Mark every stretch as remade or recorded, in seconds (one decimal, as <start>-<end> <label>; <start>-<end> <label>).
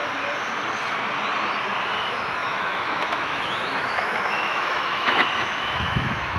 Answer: 0.0-2.4 recorded; 2.4-6.4 remade